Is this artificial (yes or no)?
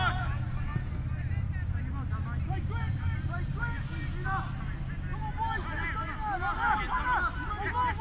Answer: no